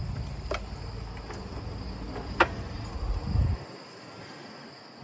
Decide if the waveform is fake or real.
real